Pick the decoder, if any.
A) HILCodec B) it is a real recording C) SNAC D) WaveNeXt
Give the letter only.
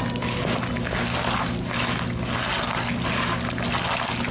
B